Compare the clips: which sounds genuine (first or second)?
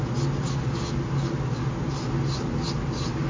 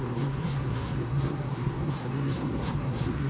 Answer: first